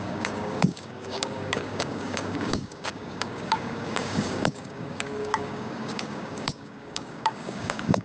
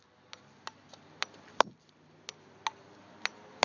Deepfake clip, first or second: first